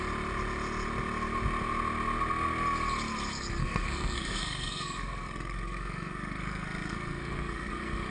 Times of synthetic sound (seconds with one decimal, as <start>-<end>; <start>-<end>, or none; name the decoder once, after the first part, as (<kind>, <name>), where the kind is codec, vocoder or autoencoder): 3.6-8.1 (codec, SNAC)